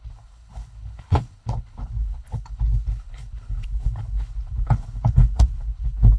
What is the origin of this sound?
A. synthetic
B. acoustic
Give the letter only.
A